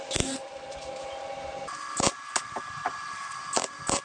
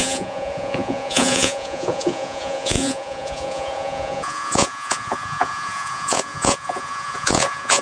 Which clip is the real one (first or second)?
first